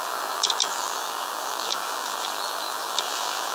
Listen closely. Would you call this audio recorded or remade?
remade